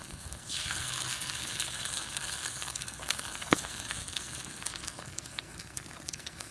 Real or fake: fake